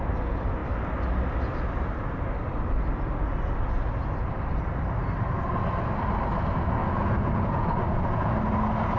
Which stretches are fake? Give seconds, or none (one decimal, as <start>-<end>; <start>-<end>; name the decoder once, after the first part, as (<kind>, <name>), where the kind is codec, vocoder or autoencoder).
6.8-8.3 (vocoder, Vocos)